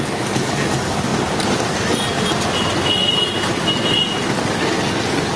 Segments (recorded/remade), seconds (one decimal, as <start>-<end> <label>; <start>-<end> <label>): 0.0-5.4 recorded